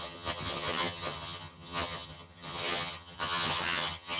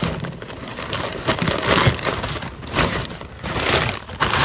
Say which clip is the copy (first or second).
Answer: first